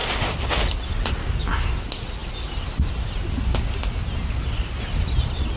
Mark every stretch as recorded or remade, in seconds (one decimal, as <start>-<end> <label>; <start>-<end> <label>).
0.0-5.6 recorded